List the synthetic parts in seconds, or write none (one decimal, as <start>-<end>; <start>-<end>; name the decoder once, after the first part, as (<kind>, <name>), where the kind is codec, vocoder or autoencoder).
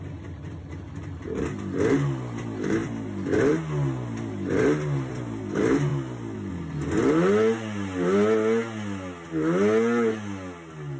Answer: none